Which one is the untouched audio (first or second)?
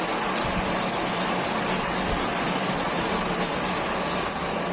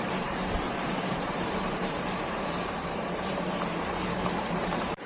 first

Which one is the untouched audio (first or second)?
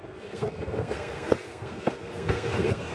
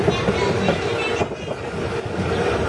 second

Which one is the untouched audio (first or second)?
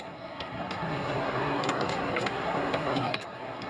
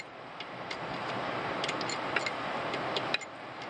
second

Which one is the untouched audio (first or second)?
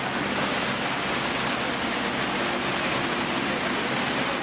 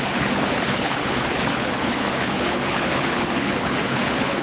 first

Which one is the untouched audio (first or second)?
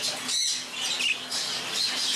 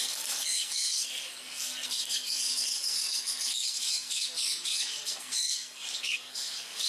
first